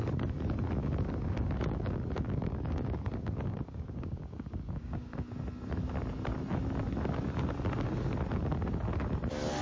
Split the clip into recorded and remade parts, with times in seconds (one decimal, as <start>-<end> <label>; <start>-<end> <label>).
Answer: 0.0-0.8 recorded; 0.8-5.1 remade; 5.1-9.6 recorded